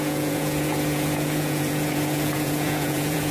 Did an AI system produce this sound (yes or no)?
yes